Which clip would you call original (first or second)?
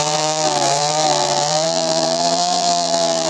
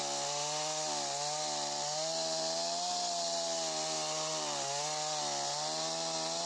second